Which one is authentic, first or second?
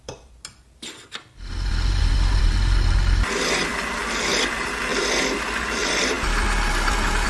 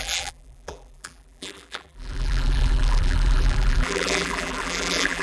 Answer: first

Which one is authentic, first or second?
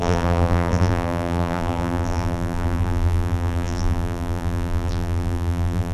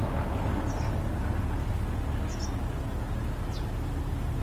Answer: second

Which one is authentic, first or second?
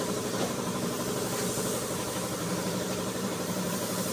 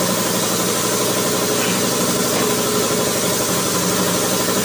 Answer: second